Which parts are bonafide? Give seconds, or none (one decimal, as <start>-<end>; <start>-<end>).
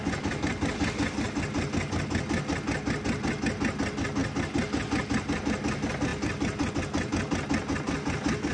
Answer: 0.0-8.5